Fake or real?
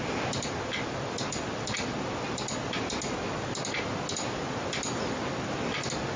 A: real